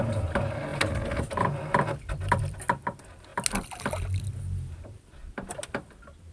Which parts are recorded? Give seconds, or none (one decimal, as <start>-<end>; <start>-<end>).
0.0-6.3